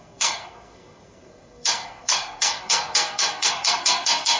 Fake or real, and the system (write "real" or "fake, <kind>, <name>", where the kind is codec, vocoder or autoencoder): fake, codec, SNAC